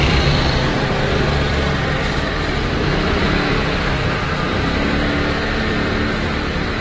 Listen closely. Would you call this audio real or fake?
fake